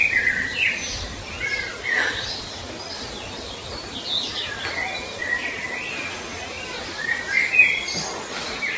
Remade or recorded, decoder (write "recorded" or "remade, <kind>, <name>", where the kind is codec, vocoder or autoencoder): remade, vocoder, BigVGAN v2